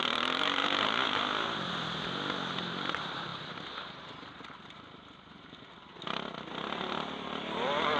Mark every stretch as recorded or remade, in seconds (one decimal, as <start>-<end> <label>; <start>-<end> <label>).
0.0-0.6 remade; 0.6-1.7 recorded; 1.7-3.3 remade; 3.3-6.5 recorded; 6.5-8.0 remade